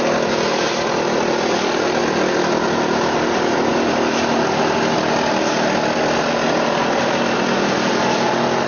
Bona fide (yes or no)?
yes